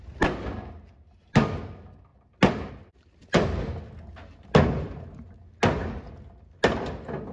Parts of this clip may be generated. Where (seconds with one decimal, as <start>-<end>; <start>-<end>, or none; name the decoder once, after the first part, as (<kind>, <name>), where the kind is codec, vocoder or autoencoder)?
none